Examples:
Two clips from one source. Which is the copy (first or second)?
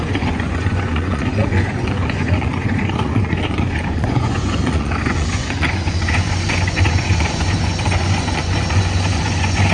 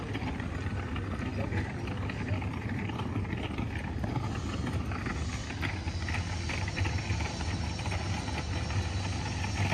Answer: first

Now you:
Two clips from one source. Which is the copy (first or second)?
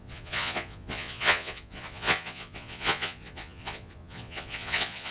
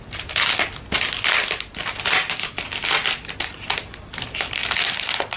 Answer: first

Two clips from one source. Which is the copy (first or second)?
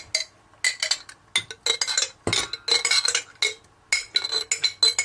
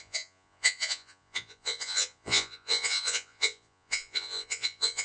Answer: second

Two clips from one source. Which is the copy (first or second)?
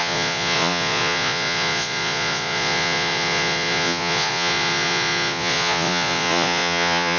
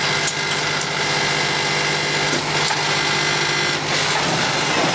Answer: first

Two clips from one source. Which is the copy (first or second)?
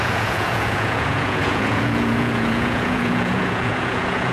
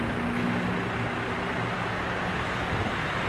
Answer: first